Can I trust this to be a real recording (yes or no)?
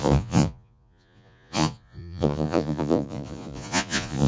no